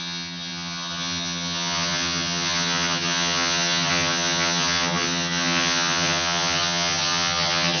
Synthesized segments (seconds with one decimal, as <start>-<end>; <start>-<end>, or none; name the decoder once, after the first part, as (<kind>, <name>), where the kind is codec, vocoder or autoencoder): 0.0-7.8 (vocoder, HiFi-GAN)